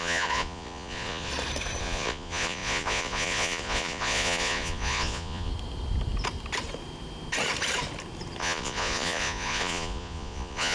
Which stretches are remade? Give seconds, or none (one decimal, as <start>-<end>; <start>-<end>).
0.0-1.3; 1.8-5.5; 8.4-10.7